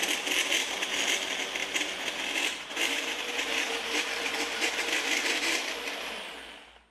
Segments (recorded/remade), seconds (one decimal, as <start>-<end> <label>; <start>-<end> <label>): 0.0-0.6 recorded; 0.6-1.1 remade; 1.1-1.6 recorded; 1.6-5.7 remade; 5.7-6.9 recorded